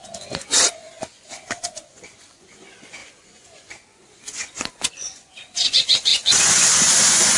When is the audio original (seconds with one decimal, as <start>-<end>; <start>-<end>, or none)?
none